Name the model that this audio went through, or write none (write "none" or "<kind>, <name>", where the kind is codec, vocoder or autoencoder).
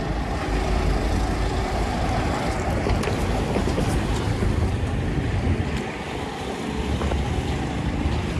vocoder, BigVGAN v2